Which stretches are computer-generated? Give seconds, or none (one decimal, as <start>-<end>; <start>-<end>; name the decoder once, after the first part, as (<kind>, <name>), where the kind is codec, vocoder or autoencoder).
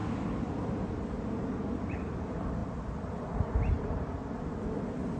0.0-4.2 (vocoder, BigVGAN v2)